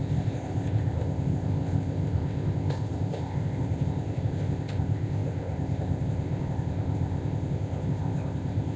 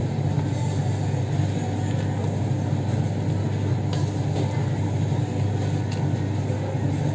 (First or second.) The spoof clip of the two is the first